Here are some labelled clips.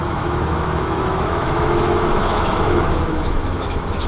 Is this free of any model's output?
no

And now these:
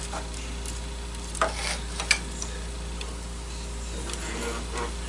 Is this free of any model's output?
yes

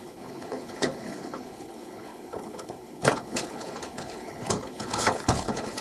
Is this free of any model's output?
no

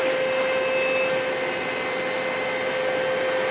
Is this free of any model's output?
yes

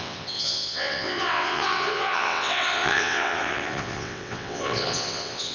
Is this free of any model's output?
no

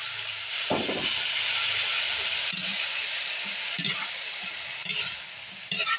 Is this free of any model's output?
yes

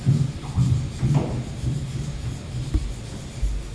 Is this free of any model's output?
yes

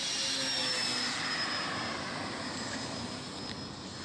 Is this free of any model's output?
yes